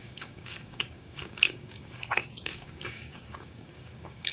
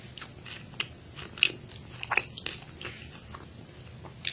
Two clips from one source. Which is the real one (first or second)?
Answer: second